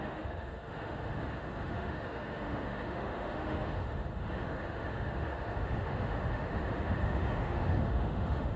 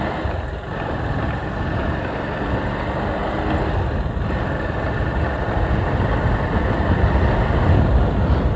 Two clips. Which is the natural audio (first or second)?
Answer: second